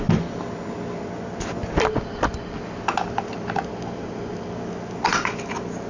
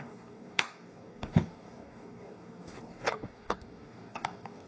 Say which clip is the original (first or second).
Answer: first